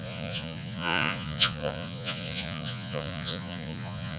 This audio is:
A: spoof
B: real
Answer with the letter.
A